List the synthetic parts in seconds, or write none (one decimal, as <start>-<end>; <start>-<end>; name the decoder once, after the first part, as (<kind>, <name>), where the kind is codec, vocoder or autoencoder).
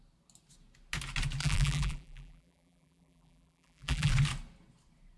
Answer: 1.4-4.1 (vocoder, BigVGAN v2)